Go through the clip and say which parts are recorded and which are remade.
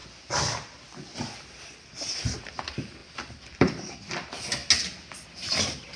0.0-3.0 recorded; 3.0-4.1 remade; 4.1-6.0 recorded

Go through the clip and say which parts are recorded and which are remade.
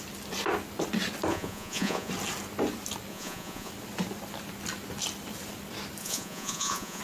0.0-1.3 recorded; 1.3-2.1 remade; 2.1-3.1 recorded; 3.1-3.7 remade; 3.7-6.0 recorded; 6.0-7.0 remade